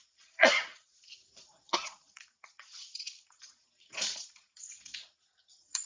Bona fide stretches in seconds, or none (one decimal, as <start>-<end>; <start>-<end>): none